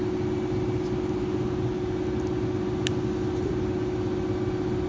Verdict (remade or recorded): recorded